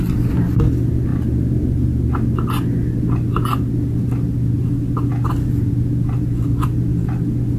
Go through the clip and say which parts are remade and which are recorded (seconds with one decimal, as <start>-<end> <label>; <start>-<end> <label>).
0.0-7.6 recorded